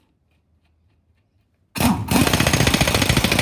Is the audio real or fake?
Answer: real